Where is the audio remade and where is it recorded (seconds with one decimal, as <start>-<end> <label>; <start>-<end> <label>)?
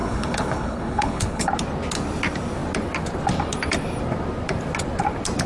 0.0-1.5 remade; 1.5-5.5 recorded